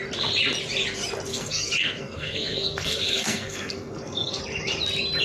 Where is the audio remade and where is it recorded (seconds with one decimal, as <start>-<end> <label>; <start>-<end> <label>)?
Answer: 0.0-1.3 recorded; 1.3-4.4 remade; 4.4-5.2 recorded

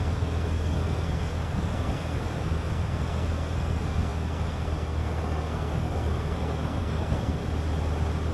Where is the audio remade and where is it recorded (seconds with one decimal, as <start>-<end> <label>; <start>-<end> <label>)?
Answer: 0.0-7.4 remade; 7.4-8.3 recorded